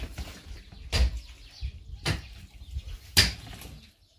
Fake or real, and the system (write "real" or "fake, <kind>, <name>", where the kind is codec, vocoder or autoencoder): real